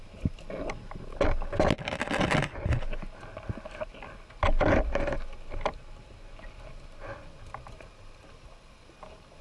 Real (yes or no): yes